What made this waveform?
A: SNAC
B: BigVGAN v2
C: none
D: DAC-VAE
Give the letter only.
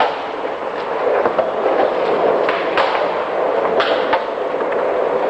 C